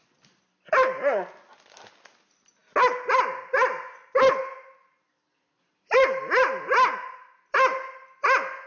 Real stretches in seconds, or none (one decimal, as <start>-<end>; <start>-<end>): 0.0-8.7